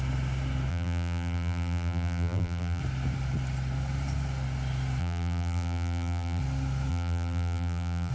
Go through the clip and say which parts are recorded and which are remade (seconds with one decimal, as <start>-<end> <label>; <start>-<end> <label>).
0.0-0.7 recorded; 0.7-2.8 remade; 2.8-5.0 recorded; 5.0-6.4 remade; 6.4-6.9 recorded; 6.9-8.1 remade